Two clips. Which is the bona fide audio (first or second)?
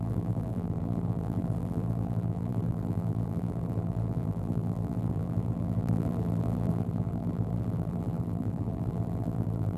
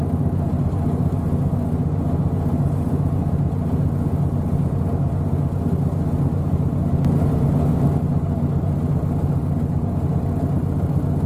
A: second